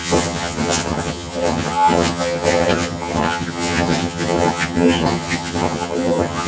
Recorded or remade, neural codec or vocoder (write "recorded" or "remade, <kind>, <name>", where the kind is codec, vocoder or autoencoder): remade, vocoder, HiFi-GAN